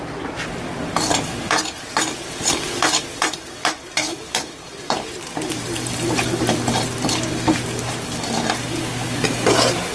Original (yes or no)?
no